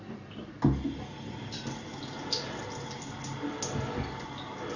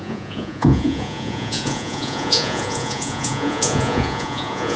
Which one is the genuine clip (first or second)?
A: first